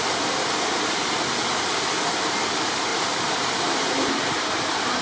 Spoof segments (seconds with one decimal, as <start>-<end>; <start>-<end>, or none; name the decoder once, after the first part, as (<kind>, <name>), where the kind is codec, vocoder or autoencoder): 2.9-5.0 (vocoder, BigVGAN v2)